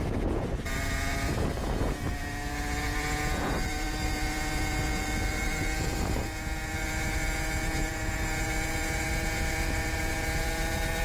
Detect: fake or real fake